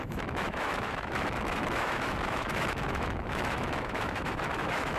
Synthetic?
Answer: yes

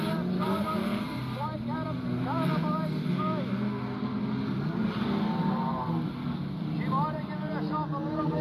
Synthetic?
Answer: no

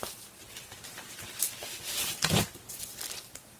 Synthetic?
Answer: no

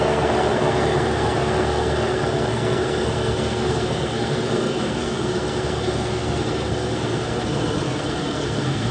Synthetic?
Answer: yes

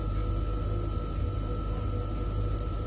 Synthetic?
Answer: no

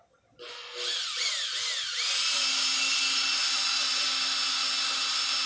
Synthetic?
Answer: no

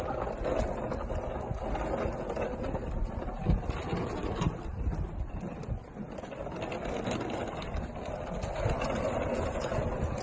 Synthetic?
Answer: no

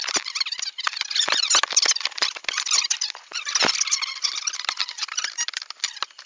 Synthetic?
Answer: no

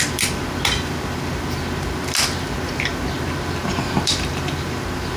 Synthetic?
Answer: yes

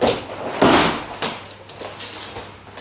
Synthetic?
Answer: no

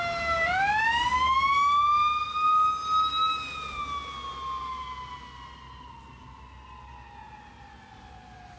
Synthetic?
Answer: no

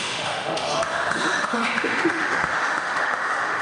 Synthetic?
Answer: yes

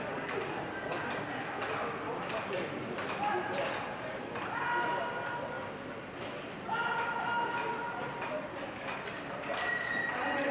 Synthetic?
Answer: no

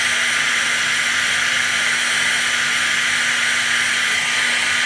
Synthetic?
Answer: no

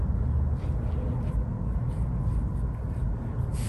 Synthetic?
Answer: no